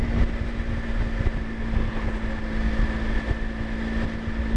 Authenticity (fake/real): real